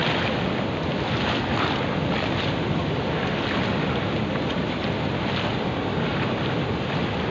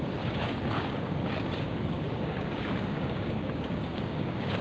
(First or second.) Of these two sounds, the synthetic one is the second